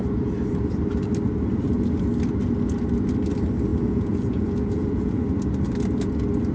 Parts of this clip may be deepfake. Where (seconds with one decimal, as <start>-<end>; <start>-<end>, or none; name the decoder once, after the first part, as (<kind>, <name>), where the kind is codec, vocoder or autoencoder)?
3.7-5.2 (vocoder, Vocos)